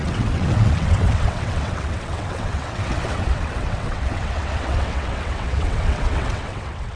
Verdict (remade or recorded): remade